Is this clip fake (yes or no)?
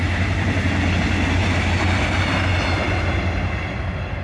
no